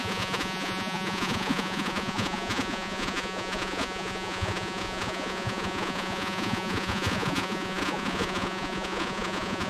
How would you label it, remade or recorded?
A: remade